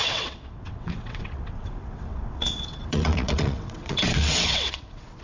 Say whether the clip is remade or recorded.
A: remade